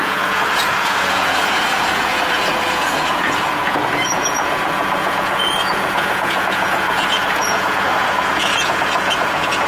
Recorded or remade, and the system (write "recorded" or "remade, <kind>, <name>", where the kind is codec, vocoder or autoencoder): remade, vocoder, Vocos